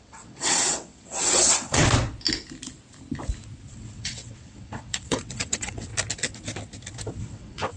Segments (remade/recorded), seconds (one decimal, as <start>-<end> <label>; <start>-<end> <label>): 0.0-1.8 remade; 1.8-3.7 recorded; 3.7-5.9 remade; 5.9-7.3 recorded; 7.3-7.8 remade